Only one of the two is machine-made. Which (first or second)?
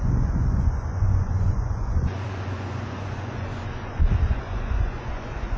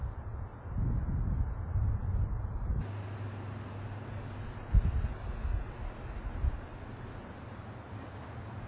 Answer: first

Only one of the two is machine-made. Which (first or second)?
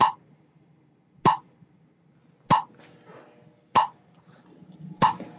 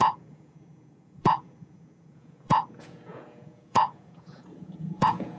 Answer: second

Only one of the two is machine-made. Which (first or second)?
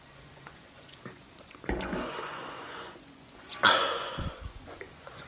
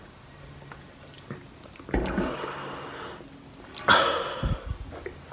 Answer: first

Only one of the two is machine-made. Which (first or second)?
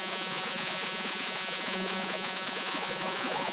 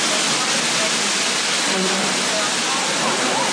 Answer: first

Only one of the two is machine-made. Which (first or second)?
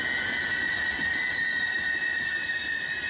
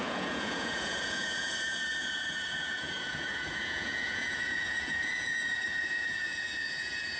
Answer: second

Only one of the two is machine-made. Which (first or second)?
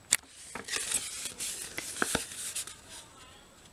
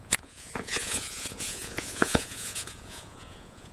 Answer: second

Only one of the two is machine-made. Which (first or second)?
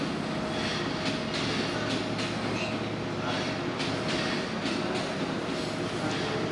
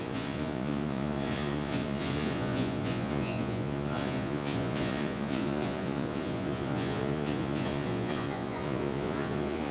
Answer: second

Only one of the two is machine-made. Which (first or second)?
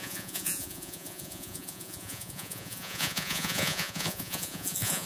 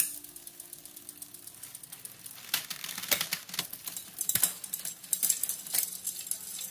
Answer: first